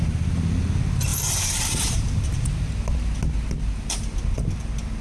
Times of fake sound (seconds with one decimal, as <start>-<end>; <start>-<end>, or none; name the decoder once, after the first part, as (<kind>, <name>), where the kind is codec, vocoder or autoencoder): 1.1-2.7 (vocoder, BigVGAN v2)